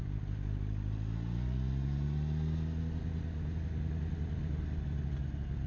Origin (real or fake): real